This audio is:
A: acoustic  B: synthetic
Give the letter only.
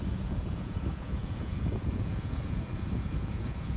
B